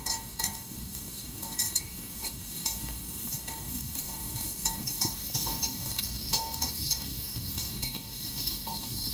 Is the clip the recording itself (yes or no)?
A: no